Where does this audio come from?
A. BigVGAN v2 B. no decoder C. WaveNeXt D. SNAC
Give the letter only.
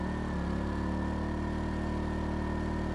B